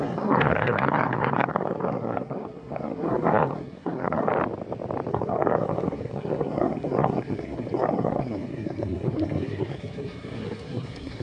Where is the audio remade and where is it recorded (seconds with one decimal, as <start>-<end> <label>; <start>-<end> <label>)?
0.0-4.3 remade; 4.3-5.1 recorded; 5.1-11.2 remade